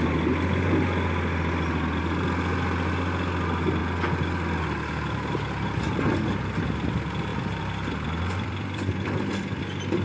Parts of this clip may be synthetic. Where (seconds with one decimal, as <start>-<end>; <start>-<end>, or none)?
7.3-9.6